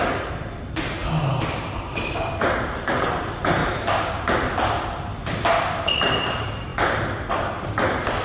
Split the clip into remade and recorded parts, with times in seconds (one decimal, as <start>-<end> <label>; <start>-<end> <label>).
0.0-1.0 remade; 1.0-1.5 recorded; 1.5-3.6 remade; 3.6-5.3 recorded; 5.3-8.2 remade